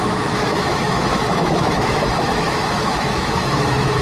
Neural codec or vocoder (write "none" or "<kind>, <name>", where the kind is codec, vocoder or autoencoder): autoencoder, DAC-VAE